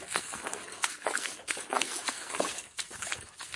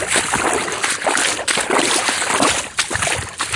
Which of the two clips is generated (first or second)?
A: first